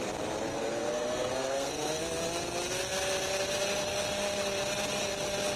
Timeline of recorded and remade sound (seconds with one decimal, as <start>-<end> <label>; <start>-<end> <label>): 0.0-0.5 recorded; 0.5-2.0 remade; 2.0-5.6 recorded